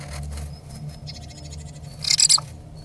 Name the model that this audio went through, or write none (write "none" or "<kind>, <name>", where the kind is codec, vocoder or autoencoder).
none